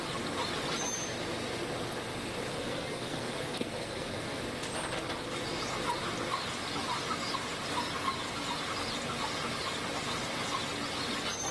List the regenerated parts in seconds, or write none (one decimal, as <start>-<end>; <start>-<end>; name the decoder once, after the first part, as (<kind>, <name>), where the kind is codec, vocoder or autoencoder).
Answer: 2.5-4.4 (codec, SNAC)